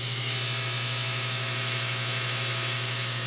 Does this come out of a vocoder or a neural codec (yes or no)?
yes